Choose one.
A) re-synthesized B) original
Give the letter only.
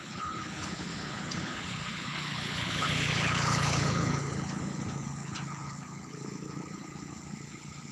A